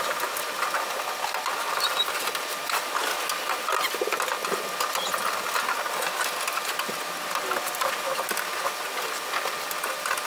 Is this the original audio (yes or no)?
yes